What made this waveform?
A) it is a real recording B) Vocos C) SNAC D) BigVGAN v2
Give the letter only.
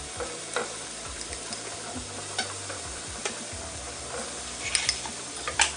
A